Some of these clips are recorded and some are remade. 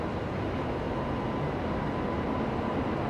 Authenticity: recorded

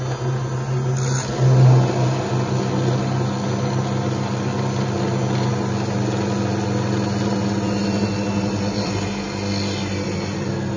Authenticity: recorded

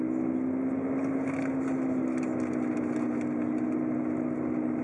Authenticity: recorded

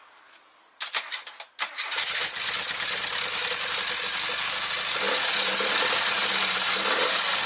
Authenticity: recorded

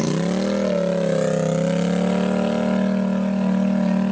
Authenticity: recorded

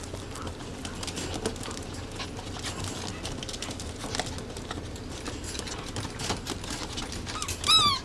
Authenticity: recorded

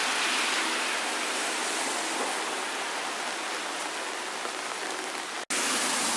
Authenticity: recorded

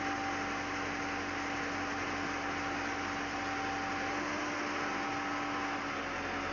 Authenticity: recorded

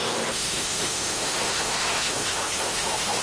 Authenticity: remade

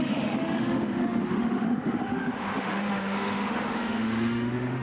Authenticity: remade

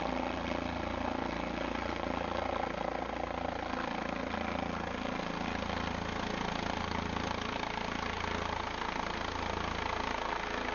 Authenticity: recorded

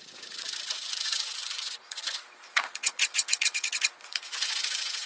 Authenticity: remade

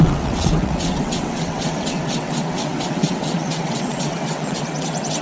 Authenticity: remade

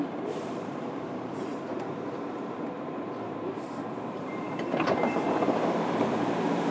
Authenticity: remade